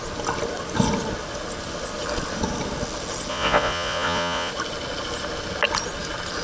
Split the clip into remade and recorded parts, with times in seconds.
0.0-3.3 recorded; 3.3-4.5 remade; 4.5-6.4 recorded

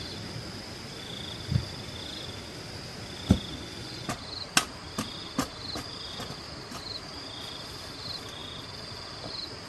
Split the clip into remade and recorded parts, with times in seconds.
0.0-3.5 recorded; 3.5-4.1 remade; 4.1-9.7 recorded

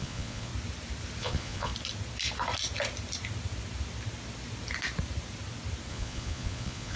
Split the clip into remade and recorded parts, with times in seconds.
0.0-0.5 remade; 0.5-1.2 recorded; 1.2-1.7 remade; 1.7-5.9 recorded; 5.9-7.0 remade

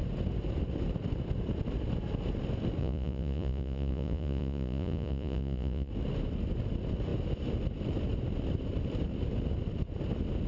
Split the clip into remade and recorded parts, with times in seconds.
0.0-2.8 recorded; 2.8-5.9 remade; 5.9-10.5 recorded

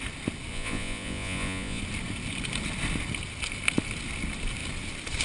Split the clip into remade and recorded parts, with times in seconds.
0.0-0.5 recorded; 0.5-1.8 remade; 1.8-5.2 recorded

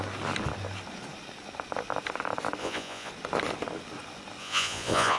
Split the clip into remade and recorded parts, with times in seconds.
0.0-2.6 recorded; 2.6-3.1 remade; 3.1-4.4 recorded; 4.4-5.2 remade

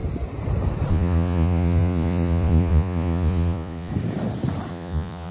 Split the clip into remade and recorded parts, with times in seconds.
0.0-0.9 recorded; 0.9-3.9 remade; 3.9-4.7 recorded; 4.7-5.3 remade